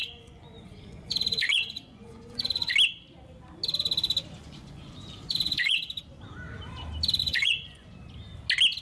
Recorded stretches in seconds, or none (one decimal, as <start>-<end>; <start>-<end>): 2.7-4.4; 5.8-7.2; 7.9-8.8